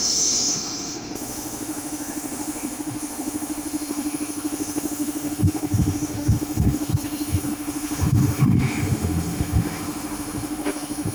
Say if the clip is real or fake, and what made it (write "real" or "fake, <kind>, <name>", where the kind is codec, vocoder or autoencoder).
fake, autoencoder, DAC-VAE